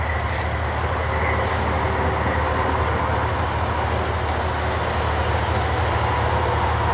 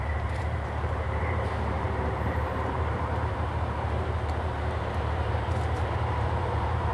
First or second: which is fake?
second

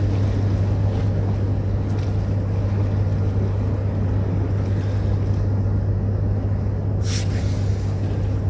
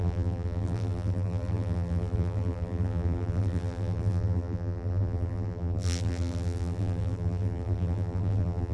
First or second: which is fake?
second